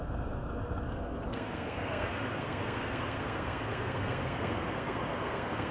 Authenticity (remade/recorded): remade